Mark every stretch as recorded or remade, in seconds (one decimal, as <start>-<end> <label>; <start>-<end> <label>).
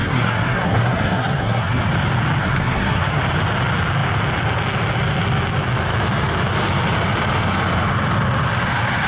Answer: 0.0-1.8 remade; 1.8-2.4 recorded; 2.4-3.2 remade; 3.2-9.1 recorded